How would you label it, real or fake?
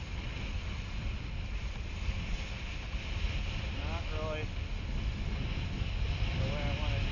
real